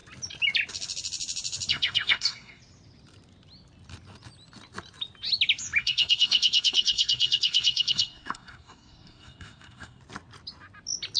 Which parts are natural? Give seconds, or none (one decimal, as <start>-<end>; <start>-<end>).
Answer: 0.0-1.7; 2.6-5.8; 10.0-11.2